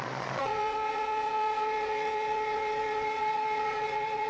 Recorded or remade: remade